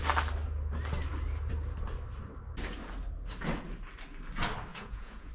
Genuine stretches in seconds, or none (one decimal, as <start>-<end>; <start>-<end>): 0.0-4.7